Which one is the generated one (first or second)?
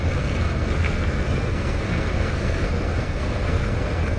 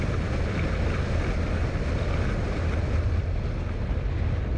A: first